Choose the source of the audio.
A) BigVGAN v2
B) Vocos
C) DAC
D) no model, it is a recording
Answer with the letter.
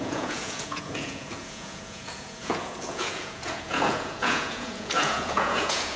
B